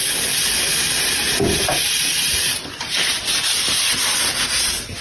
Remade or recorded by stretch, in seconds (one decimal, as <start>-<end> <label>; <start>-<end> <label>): 0.0-5.0 recorded